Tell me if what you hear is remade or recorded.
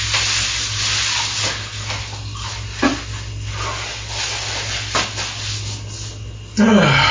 recorded